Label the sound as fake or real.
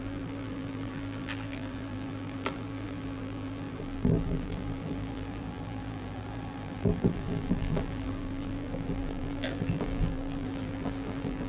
fake